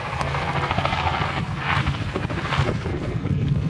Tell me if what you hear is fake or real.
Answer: fake